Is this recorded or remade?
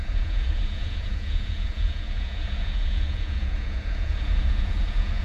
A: remade